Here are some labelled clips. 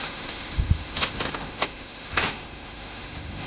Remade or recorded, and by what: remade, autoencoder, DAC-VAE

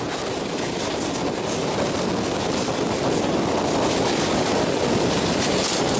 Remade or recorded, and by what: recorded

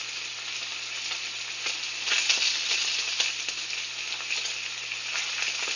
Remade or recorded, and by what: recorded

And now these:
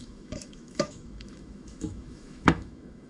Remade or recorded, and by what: remade, autoencoder, DAC-VAE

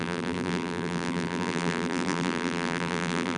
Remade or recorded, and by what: remade, vocoder, BigVGAN v2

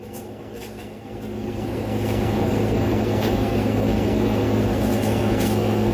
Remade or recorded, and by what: remade, codec, SNAC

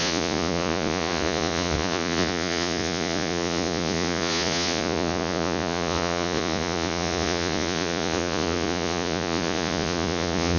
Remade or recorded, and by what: remade, vocoder, Vocos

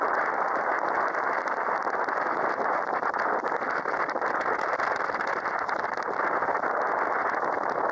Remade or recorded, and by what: recorded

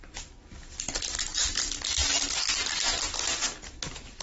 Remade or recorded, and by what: recorded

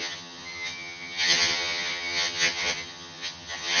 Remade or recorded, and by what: remade, vocoder, HiFi-GAN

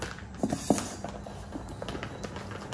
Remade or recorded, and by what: recorded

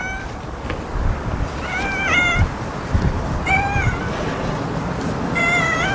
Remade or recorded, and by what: recorded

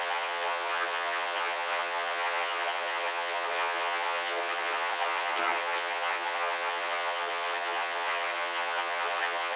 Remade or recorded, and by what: remade, vocoder, HiFi-GAN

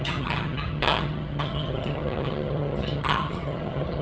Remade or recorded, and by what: remade, vocoder, HiFi-GAN